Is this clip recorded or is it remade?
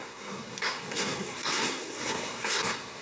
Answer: remade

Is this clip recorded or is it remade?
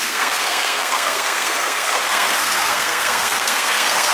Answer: remade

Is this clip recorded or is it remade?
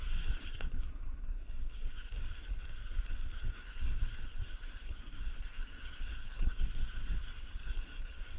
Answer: remade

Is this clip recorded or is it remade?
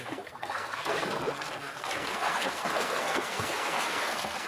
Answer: remade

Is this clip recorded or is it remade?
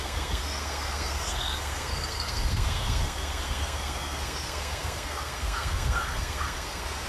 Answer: remade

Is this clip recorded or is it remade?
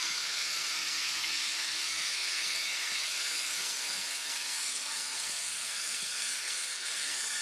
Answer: remade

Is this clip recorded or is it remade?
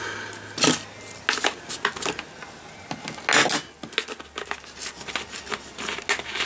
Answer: recorded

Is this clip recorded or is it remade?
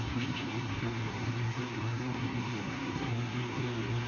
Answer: remade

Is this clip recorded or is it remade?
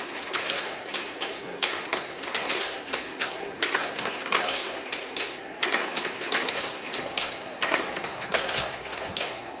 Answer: remade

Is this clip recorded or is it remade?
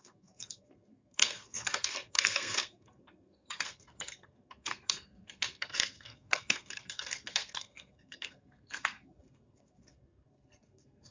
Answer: remade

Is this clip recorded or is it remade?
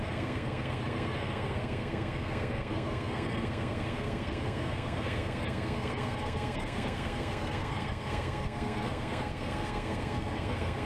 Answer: remade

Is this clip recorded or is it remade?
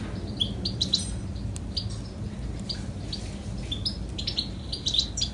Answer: recorded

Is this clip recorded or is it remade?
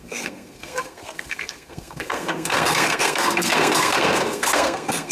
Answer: remade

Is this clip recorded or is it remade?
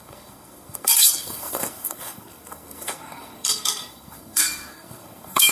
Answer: remade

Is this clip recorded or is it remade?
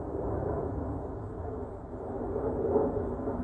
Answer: recorded